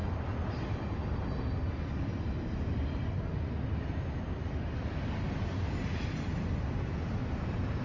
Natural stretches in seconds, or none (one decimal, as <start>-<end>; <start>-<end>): 0.0-7.8